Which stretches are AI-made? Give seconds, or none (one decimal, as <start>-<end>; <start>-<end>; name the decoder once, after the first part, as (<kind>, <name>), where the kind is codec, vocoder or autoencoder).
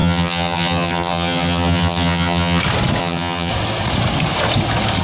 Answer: 0.0-2.6 (vocoder, HiFi-GAN); 3.0-3.5